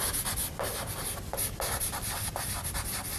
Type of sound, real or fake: real